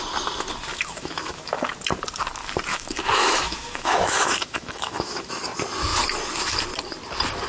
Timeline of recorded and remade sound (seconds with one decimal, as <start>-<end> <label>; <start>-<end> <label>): 0.0-0.7 recorded; 0.7-1.7 remade; 1.7-2.7 recorded; 2.7-5.3 remade; 5.3-7.5 recorded